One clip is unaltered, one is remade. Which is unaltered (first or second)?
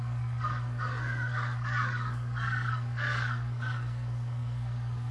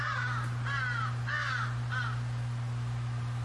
second